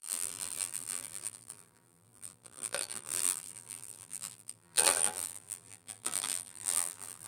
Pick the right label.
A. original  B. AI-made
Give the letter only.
B